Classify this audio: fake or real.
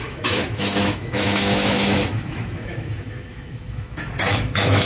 fake